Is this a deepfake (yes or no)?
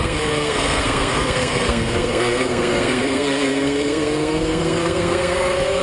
yes